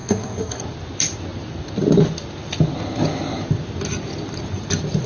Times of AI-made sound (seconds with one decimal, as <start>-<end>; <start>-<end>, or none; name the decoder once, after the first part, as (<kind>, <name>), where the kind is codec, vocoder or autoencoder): 0.0-0.6 (codec, SNAC)